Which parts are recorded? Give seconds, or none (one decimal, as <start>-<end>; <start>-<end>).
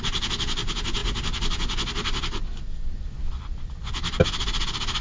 0.0-5.0